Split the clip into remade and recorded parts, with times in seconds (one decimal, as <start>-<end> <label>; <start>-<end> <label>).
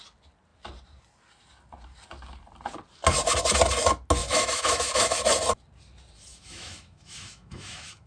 0.0-4.2 recorded; 4.2-5.2 remade; 5.2-6.3 recorded; 6.3-8.1 remade